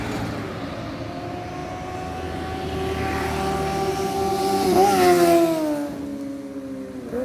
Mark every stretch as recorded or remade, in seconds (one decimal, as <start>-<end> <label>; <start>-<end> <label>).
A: 0.0-7.2 recorded